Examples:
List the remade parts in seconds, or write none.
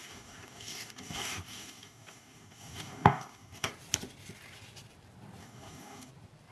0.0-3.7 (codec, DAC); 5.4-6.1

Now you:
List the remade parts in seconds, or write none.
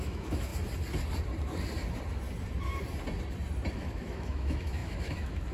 0.0-0.5 (autoencoder, DAC-VAE); 3.7-5.5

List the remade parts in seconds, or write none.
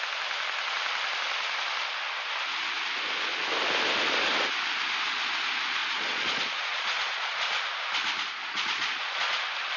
5.8-7.4 (vocoder, Vocos); 8.4-9.4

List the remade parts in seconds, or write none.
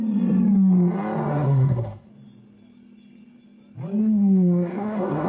1.3-2.1 (codec, SNAC); 4.0-5.3